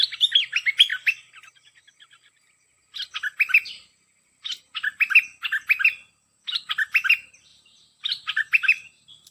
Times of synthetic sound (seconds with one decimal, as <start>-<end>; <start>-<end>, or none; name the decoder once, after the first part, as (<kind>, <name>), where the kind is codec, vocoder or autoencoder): 7.5-8.9 (vocoder, BigVGAN v2)